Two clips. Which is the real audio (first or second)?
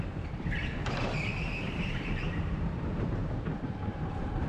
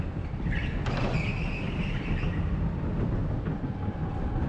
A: second